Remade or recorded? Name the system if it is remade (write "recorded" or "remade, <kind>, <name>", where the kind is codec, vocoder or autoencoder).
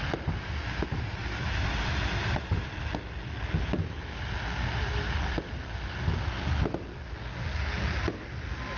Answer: recorded